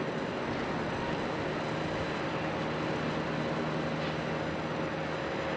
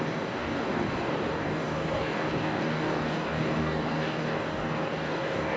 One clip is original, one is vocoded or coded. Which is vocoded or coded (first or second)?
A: second